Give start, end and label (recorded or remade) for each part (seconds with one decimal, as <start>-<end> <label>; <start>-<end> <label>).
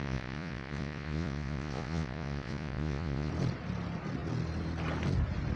0.0-3.3 remade; 3.3-5.6 recorded